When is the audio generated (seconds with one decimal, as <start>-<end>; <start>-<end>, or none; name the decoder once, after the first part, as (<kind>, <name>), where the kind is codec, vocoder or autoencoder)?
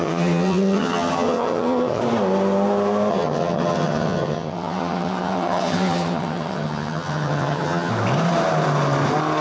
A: 0.0-2.0 (vocoder, HiFi-GAN); 3.1-7.9